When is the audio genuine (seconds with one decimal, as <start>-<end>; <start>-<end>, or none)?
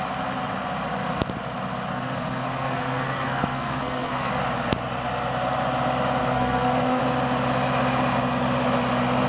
0.0-1.9; 4.3-6.2; 7.0-9.3